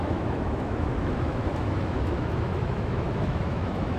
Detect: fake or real fake